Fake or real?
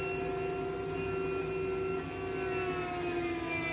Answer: real